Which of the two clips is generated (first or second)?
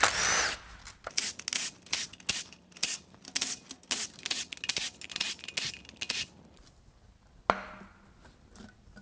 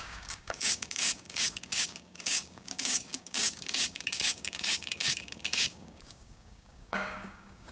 second